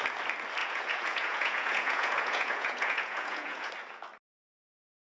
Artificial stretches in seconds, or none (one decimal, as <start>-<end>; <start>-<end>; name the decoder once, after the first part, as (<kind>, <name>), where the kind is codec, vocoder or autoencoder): 0.6-3.7 (vocoder, Vocos)